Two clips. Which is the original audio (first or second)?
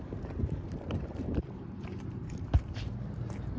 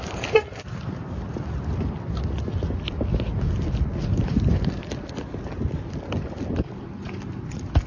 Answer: second